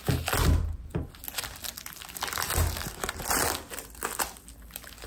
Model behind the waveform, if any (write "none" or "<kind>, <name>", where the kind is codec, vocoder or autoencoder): none